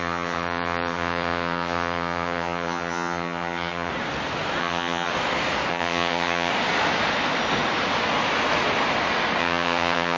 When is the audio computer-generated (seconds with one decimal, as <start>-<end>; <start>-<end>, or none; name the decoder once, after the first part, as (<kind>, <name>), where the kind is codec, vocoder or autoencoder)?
0.0-3.9 (vocoder, HiFi-GAN); 4.6-5.1; 5.7-6.5; 9.4-10.2